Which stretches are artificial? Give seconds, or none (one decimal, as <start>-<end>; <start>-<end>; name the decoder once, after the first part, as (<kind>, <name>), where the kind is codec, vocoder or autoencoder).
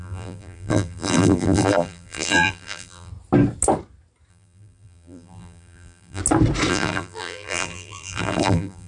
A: 0.0-3.1 (vocoder, BigVGAN v2); 4.3-6.2; 6.7-8.9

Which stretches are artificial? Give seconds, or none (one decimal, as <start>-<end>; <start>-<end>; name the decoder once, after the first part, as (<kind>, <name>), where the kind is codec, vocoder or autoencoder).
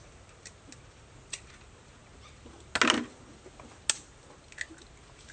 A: none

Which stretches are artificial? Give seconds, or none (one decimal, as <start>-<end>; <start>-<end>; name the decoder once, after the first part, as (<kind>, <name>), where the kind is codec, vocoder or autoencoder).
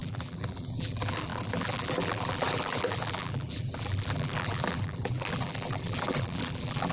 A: 0.0-6.9 (vocoder, BigVGAN v2)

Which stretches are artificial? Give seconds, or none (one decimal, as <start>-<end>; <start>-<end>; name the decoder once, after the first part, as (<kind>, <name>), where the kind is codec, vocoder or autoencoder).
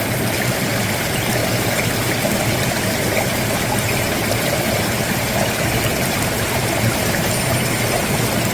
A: none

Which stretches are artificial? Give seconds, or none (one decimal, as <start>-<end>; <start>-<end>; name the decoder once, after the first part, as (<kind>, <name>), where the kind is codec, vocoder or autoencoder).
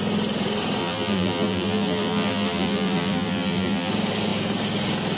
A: 0.8-3.9 (vocoder, BigVGAN v2)